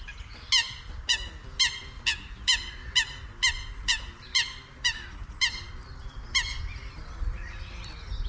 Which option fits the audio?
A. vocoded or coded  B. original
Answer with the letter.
B